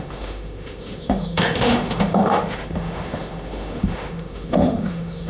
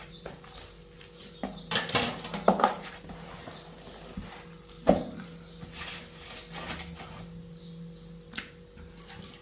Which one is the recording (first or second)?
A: second